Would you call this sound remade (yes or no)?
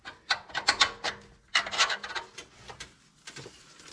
no